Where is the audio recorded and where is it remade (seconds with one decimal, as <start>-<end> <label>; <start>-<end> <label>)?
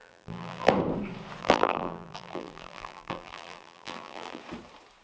0.0-0.7 remade; 0.7-1.4 recorded; 1.4-4.4 remade; 4.4-5.0 recorded